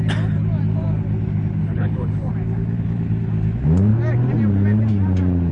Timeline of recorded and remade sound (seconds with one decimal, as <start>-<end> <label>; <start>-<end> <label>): 0.0-1.6 recorded; 1.6-2.3 remade; 2.3-5.5 recorded